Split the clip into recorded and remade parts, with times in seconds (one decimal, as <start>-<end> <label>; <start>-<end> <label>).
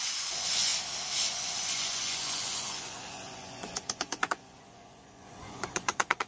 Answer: 0.0-0.7 remade; 0.7-1.2 recorded; 1.2-6.3 remade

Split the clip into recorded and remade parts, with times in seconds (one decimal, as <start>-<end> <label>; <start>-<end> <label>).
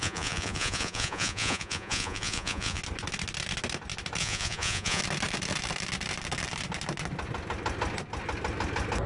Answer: 0.0-2.8 remade; 2.8-4.2 recorded; 4.2-5.0 remade; 5.0-9.1 recorded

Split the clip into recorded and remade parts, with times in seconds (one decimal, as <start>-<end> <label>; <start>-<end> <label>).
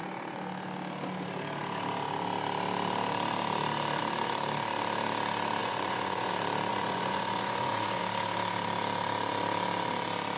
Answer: 0.0-5.6 recorded; 5.6-6.3 remade; 6.3-6.7 recorded; 6.7-8.0 remade; 8.0-10.4 recorded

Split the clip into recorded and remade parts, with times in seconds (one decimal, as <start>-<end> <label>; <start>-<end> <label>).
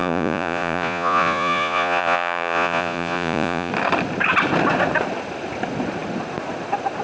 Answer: 0.0-3.7 remade; 3.7-7.0 recorded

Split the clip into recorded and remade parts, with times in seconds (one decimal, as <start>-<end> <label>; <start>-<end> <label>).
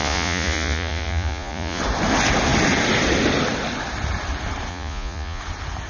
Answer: 0.0-1.8 remade; 1.8-4.7 recorded; 4.7-5.4 remade; 5.4-5.9 recorded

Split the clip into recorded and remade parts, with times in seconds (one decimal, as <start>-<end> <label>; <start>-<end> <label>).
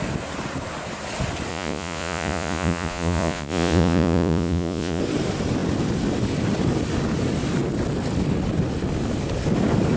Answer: 0.0-1.5 recorded; 1.5-5.0 remade; 5.0-10.0 recorded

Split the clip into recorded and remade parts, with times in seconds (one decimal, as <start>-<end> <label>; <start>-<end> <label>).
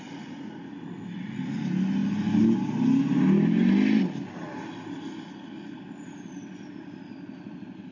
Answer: 0.0-7.9 recorded